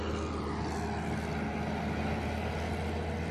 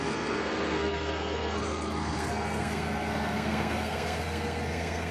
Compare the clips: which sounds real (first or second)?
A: first